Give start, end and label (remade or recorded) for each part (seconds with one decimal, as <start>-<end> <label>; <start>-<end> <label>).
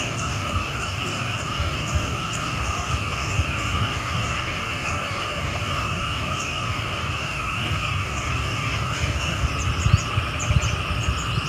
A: 0.0-9.5 remade; 9.5-11.5 recorded